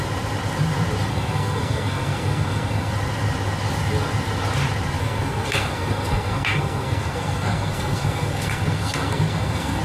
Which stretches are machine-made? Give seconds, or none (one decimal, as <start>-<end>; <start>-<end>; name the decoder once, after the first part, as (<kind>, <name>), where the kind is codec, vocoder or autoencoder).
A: 1.1-2.9 (codec, SNAC); 5.0-9.8